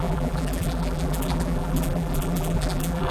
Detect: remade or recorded remade